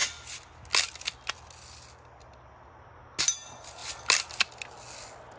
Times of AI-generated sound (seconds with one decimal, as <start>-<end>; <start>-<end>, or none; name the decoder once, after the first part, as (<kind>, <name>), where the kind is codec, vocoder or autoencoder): none